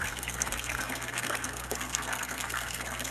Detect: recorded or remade remade